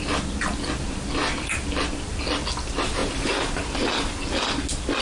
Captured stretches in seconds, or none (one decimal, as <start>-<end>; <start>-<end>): 0.0-3.0; 4.1-5.0